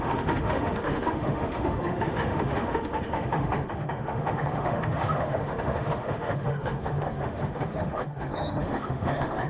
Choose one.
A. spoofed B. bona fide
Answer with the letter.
A